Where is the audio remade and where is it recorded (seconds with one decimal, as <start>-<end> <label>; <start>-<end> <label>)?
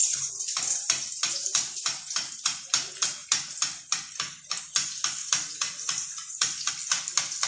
0.0-1.8 remade; 1.8-5.2 recorded; 5.2-6.7 remade; 6.7-7.5 recorded